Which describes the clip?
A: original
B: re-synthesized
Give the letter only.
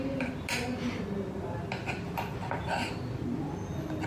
A